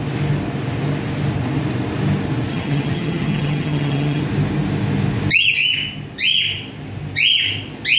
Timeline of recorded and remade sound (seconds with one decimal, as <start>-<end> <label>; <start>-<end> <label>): 0.0-2.5 recorded; 2.5-4.2 remade; 4.2-8.0 recorded